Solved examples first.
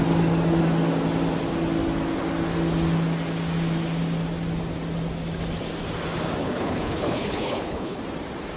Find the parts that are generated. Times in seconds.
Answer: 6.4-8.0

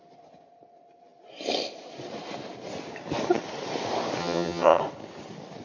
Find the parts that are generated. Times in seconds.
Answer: 4.2-4.8

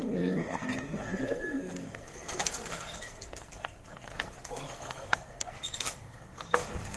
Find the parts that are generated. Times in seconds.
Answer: 0.0-7.0

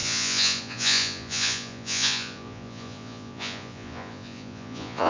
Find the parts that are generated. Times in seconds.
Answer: 0.0-5.1